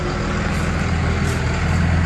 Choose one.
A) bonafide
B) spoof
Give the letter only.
A